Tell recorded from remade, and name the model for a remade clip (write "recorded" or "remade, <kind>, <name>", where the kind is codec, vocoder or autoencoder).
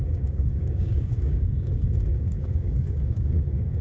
remade, codec, DAC